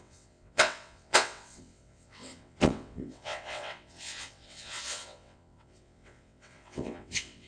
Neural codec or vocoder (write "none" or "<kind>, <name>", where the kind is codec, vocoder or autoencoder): vocoder, WaveNeXt